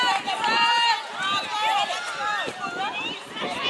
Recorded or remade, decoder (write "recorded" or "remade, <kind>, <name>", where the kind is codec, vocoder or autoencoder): recorded